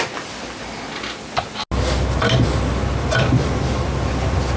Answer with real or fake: real